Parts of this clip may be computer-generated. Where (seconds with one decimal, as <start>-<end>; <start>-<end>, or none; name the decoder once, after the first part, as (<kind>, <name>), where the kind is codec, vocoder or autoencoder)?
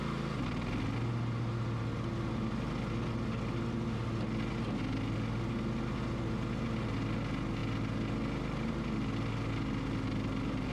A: none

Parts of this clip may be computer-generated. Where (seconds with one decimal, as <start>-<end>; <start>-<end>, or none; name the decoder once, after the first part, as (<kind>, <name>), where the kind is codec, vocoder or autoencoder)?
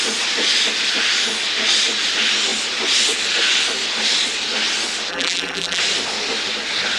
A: 5.1-5.8 (vocoder, BigVGAN v2)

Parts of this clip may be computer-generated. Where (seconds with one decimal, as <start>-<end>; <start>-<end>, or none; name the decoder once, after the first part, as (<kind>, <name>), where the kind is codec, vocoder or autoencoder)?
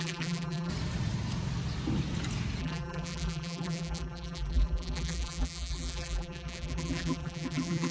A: 0.0-0.7 (vocoder, BigVGAN v2); 2.6-7.9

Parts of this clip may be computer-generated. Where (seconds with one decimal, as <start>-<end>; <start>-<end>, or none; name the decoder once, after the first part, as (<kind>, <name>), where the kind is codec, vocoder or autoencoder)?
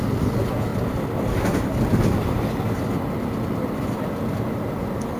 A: 0.0-0.7 (vocoder, BigVGAN v2); 3.5-5.2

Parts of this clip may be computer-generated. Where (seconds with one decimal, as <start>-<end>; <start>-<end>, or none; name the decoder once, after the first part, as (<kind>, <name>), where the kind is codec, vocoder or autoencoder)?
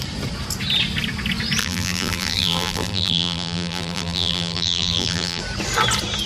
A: 1.6-5.4 (vocoder, BigVGAN v2)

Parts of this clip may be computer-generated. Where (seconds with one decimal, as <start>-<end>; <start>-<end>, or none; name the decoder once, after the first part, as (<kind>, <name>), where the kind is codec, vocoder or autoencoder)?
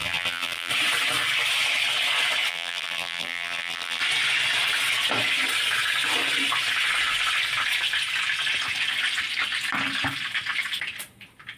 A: 0.0-0.7 (vocoder, BigVGAN v2); 2.5-4.0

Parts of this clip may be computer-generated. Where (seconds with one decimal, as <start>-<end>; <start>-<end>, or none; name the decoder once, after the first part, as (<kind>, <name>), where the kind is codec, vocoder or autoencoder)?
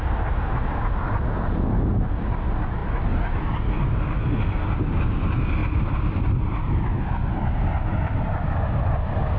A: 5.6-8.5 (vocoder, BigVGAN v2)